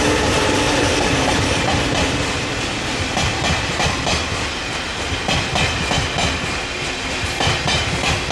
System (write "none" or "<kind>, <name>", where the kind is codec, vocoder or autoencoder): none